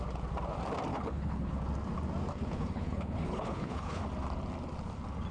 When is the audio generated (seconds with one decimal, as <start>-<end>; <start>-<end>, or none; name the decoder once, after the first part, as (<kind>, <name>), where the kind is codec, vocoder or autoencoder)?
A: 0.9-1.5 (codec, HILCodec); 2.3-4.0